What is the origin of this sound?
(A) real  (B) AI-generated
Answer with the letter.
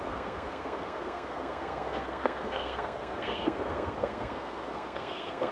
B